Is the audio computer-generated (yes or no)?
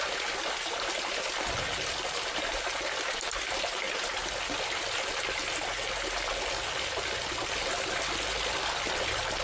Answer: no